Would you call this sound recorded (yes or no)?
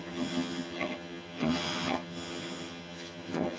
no